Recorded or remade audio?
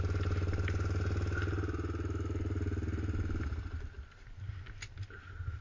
recorded